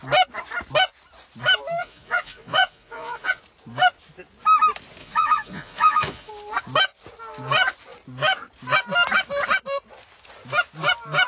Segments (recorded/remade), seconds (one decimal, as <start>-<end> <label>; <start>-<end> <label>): 0.0-1.8 recorded; 1.8-3.4 remade; 3.4-5.0 recorded; 5.0-6.3 remade; 6.3-11.3 recorded